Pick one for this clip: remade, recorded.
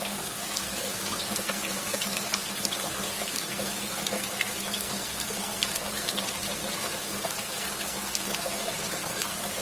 remade